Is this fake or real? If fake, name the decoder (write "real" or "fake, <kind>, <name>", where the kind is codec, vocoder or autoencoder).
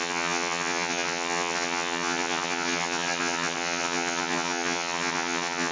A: fake, vocoder, HiFi-GAN